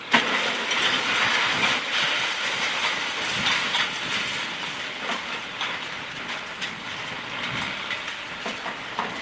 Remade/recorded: recorded